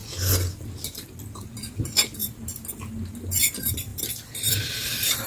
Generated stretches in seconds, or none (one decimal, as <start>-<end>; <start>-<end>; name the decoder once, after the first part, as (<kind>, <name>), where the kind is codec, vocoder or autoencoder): 1.8-2.2 (vocoder, BigVGAN v2); 3.4-5.3